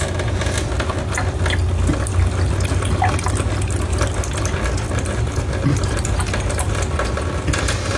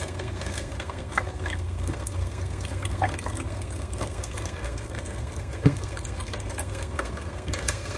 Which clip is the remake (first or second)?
second